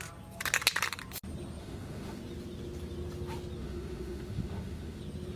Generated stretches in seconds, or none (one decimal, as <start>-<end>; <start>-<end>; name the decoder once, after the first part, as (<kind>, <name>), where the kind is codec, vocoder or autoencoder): 1.6-2.2 (autoencoder, DAC-VAE); 3.6-5.0